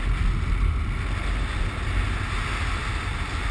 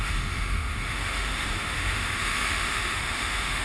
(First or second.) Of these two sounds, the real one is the first